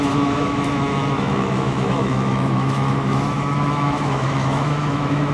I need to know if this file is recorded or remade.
remade